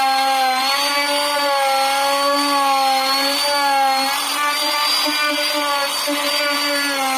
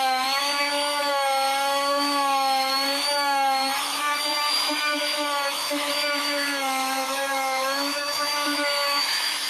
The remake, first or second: second